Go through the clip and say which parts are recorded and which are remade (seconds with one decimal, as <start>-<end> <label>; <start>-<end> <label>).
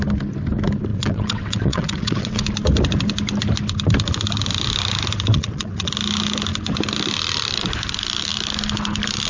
0.0-0.9 recorded; 0.9-2.4 remade; 2.4-5.3 recorded; 5.3-5.9 remade; 5.9-9.3 recorded